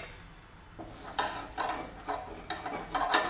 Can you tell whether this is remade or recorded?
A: recorded